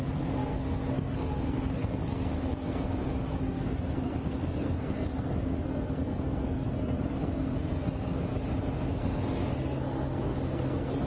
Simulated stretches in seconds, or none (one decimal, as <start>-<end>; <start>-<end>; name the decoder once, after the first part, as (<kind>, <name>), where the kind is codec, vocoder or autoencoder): 0.0-8.3 (codec, SNAC); 8.9-11.1